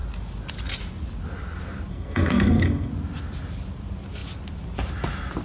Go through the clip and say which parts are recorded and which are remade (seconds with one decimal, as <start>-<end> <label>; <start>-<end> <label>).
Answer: 0.0-1.9 recorded; 1.9-2.9 remade; 2.9-5.4 recorded